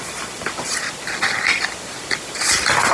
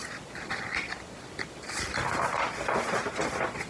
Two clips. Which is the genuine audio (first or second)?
first